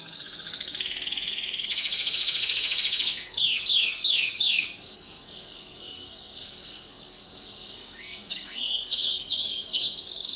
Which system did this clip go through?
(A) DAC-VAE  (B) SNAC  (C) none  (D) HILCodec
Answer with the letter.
B